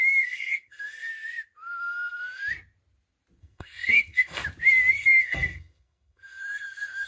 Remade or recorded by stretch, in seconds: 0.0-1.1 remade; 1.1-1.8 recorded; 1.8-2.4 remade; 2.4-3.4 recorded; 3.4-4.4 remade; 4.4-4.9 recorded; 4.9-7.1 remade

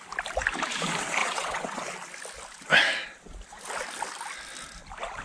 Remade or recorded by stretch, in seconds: 0.0-1.2 recorded; 1.2-1.8 remade; 1.8-5.2 recorded

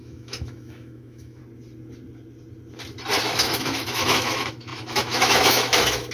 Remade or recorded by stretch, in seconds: 0.0-1.4 remade; 1.4-3.2 recorded; 3.2-6.1 remade

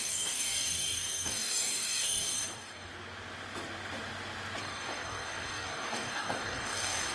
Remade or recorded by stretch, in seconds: 0.0-2.9 remade; 2.9-4.6 recorded; 4.6-7.1 remade

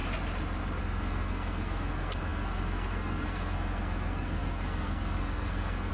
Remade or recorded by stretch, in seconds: 0.0-0.8 recorded; 0.8-5.9 remade